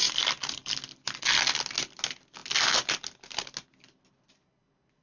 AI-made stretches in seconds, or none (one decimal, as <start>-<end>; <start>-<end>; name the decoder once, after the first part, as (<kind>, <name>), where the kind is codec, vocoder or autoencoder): none